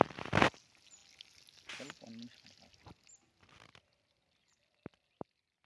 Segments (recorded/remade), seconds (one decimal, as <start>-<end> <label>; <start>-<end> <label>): 0.0-5.7 recorded